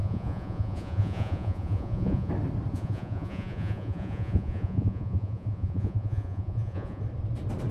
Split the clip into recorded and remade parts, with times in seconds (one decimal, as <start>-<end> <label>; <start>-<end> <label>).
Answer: 0.0-2.3 remade; 2.3-2.7 recorded; 2.7-7.0 remade; 7.0-7.7 recorded